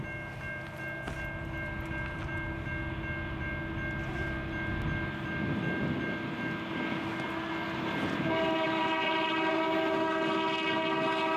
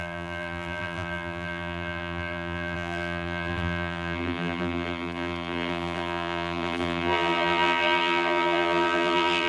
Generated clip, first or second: second